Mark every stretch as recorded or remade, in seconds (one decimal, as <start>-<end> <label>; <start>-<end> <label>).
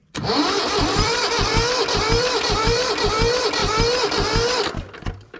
0.0-2.9 remade; 2.9-5.4 recorded